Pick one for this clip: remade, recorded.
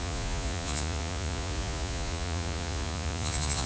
remade